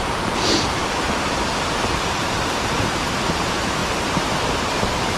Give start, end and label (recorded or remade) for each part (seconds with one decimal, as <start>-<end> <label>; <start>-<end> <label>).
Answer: 0.0-0.8 remade; 0.8-1.9 recorded; 1.9-3.8 remade; 3.8-4.5 recorded; 4.5-5.2 remade